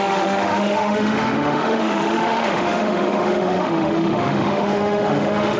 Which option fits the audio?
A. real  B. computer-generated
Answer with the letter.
B